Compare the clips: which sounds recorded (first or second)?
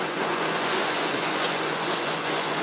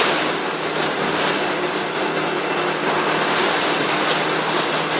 second